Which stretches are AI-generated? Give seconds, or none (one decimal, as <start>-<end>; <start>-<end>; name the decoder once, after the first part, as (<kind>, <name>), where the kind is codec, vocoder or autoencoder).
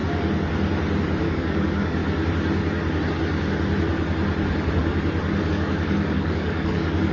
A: 1.2-2.0 (codec, DAC); 5.5-7.1